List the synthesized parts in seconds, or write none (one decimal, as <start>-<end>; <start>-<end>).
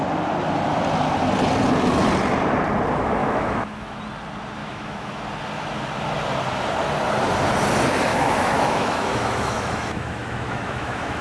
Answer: 3.2-4.0; 4.6-5.2; 8.1-11.2